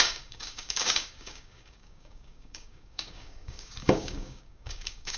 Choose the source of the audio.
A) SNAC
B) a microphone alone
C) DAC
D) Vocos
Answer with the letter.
C